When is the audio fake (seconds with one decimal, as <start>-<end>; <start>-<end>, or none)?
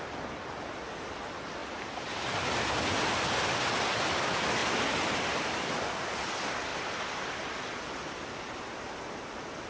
none